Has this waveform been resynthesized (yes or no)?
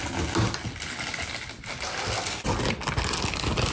no